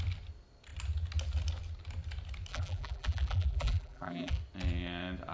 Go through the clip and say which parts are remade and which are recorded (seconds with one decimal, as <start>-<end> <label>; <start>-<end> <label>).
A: 0.0-2.5 recorded; 2.5-4.4 remade; 4.4-5.3 recorded